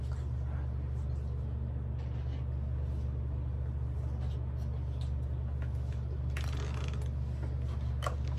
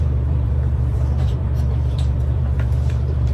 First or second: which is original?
first